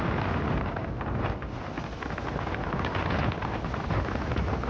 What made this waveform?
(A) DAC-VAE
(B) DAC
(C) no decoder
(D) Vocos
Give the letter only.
C